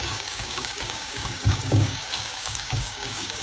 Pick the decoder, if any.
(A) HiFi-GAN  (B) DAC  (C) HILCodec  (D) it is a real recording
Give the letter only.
B